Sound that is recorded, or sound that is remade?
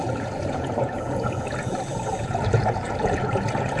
remade